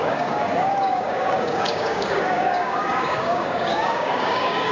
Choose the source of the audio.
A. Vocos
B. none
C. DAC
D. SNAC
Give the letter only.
C